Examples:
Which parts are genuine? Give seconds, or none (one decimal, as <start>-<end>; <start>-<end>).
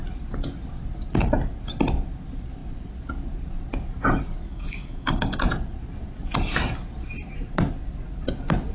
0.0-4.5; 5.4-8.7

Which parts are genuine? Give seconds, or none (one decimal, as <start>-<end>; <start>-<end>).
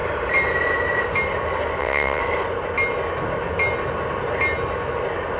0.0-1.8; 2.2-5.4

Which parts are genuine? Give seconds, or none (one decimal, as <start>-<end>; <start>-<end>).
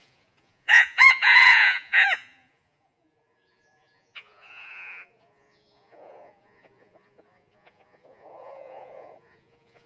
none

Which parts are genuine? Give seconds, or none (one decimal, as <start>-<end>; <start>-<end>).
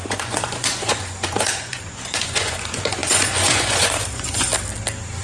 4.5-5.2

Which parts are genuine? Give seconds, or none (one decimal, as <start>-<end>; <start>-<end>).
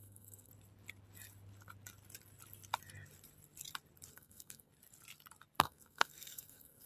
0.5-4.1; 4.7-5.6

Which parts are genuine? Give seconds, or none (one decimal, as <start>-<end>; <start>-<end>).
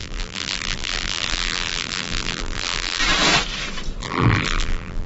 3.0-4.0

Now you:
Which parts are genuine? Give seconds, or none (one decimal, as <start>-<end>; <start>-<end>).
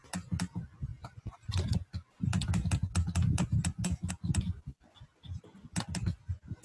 0.0-6.6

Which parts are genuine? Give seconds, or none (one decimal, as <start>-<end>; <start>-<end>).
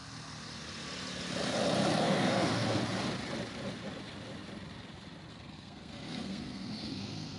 0.0-2.0; 2.8-5.3